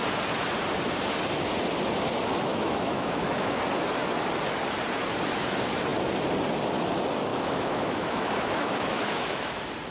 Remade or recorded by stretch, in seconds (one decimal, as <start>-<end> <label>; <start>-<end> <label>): 0.0-2.5 recorded; 2.5-3.6 remade; 3.6-7.3 recorded; 7.3-9.5 remade; 9.5-9.9 recorded